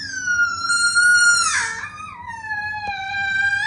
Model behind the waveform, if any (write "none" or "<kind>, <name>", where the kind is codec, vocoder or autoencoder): none